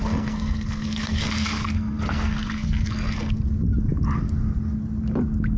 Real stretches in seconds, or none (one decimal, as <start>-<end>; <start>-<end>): 3.4-5.6